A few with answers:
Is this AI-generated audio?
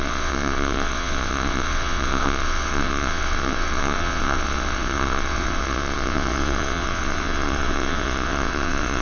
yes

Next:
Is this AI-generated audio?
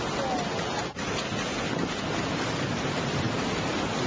no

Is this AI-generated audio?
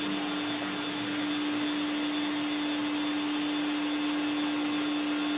no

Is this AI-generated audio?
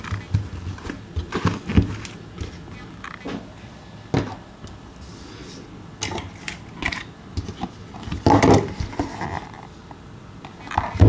no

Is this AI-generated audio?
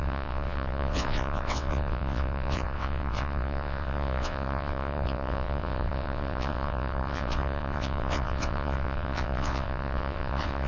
yes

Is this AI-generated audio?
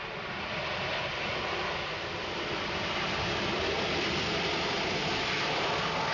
no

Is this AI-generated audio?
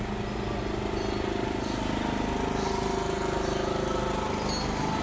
no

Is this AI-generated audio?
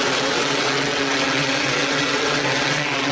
yes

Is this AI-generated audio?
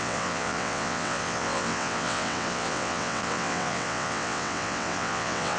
yes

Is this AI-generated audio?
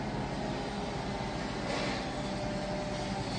no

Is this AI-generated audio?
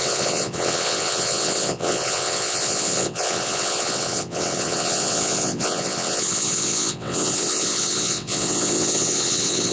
yes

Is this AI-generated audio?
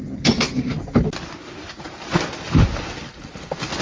no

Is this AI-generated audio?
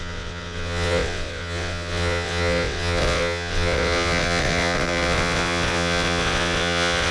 yes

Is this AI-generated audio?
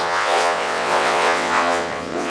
yes